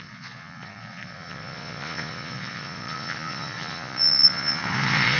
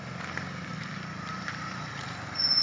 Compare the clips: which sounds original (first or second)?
second